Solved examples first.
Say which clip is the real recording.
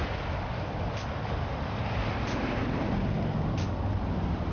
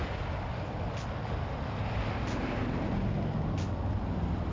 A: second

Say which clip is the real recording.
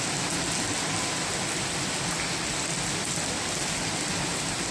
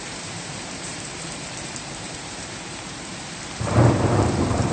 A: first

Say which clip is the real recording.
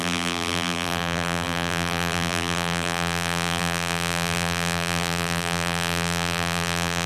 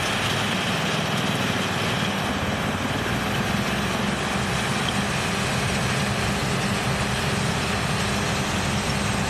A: second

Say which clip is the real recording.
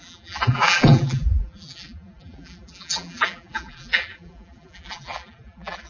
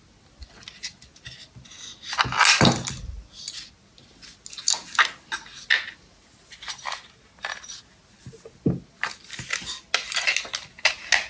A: second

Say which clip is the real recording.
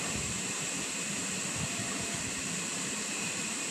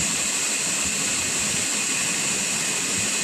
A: second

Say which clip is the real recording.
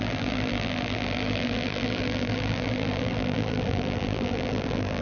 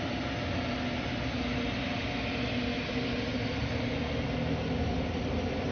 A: second